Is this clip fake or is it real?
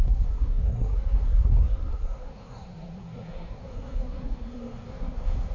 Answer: fake